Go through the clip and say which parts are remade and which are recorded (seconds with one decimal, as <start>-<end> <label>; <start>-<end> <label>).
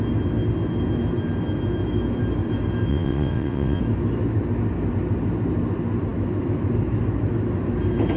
0.0-2.9 recorded; 2.9-3.8 remade; 3.8-8.2 recorded